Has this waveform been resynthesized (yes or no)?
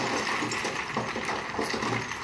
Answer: no